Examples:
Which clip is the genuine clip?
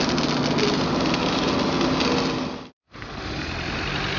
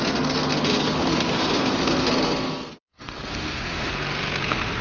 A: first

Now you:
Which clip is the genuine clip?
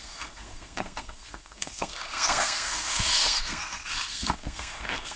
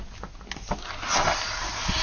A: second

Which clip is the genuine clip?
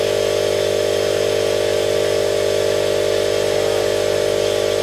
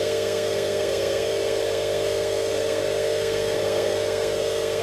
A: first